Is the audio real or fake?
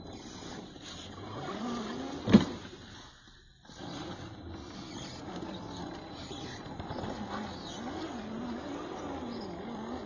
real